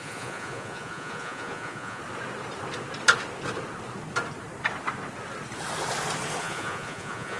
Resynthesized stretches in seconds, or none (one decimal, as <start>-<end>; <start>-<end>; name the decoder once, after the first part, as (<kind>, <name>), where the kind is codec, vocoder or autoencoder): 0.0-2.0 (vocoder, Vocos); 6.4-7.4